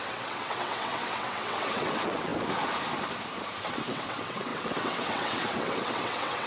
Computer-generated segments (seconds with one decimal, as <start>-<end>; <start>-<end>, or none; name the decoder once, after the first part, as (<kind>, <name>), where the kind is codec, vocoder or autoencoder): 0.0-2.3 (vocoder, WaveNeXt); 3.7-6.5